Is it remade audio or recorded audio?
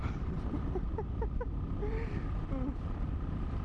recorded